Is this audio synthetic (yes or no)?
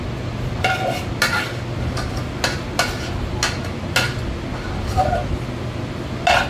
no